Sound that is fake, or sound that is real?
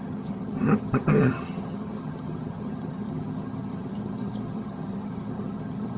fake